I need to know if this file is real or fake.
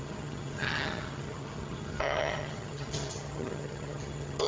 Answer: fake